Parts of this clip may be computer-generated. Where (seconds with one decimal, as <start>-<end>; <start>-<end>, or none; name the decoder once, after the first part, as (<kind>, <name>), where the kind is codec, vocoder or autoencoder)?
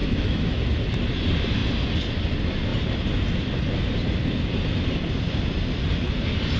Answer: 0.0-0.6 (autoencoder, DAC-VAE)